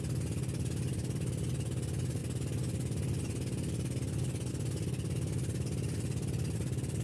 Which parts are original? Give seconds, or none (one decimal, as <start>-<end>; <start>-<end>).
0.0-7.0